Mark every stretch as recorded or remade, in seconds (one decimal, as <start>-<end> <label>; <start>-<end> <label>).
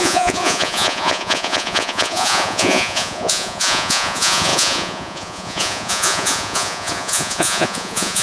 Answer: 0.0-8.2 remade